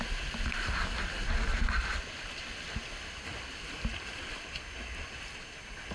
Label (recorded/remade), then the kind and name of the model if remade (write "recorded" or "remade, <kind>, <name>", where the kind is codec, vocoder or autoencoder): recorded